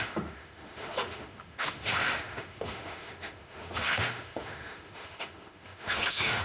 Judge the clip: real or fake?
fake